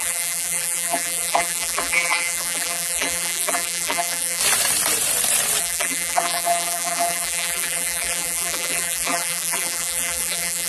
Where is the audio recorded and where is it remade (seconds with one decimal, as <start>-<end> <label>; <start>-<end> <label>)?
0.0-4.4 remade; 4.4-5.6 recorded; 5.6-10.7 remade